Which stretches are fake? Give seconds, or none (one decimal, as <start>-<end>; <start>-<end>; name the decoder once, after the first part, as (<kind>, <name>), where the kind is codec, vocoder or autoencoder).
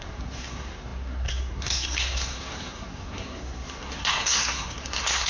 0.0-5.3 (codec, SNAC)